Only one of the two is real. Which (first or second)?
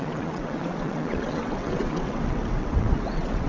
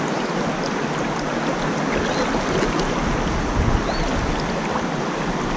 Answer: second